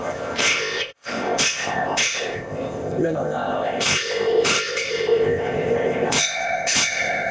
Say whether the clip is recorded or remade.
remade